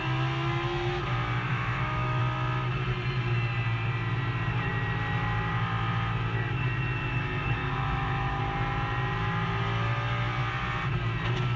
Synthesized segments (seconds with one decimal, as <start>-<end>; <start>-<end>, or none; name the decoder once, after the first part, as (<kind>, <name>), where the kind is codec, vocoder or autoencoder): 1.5-2.2 (autoencoder, DAC-VAE); 7.6-8.4